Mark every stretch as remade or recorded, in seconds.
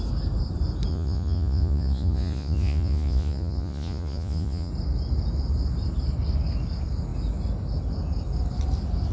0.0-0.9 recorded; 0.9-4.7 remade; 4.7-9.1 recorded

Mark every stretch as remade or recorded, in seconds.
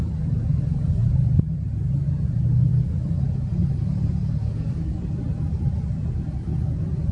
0.0-1.0 recorded; 1.0-1.9 remade; 1.9-7.1 recorded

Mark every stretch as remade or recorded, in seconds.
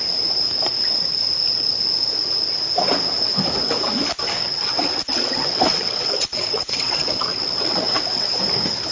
0.0-4.4 recorded; 4.4-8.3 remade; 8.3-8.9 recorded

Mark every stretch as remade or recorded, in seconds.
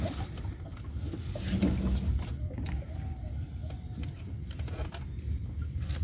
0.0-6.0 recorded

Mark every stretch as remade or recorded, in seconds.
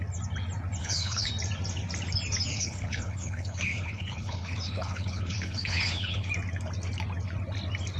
0.0-0.8 recorded; 0.8-1.3 remade; 1.3-2.5 recorded; 2.5-6.3 remade; 6.3-8.0 recorded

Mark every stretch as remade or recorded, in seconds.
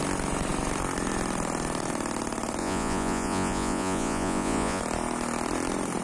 0.0-2.6 recorded; 2.6-4.8 remade; 4.8-6.0 recorded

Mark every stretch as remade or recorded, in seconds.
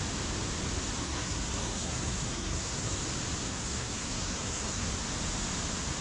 0.0-1.0 recorded; 1.0-3.0 remade; 3.0-3.4 recorded; 3.4-4.9 remade; 4.9-6.0 recorded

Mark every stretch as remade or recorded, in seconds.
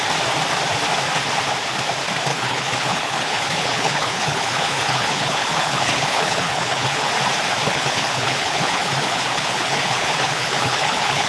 0.0-2.3 recorded; 2.3-7.1 remade; 7.1-7.7 recorded; 7.7-11.3 remade